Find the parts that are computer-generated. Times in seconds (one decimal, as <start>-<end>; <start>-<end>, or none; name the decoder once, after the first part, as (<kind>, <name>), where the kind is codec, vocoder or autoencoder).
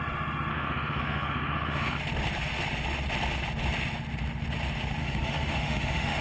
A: 0.5-2.0 (autoencoder, DAC-VAE); 5.0-6.2